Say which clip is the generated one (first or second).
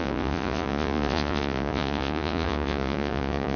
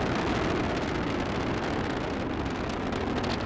first